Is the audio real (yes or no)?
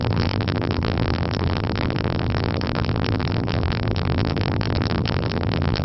no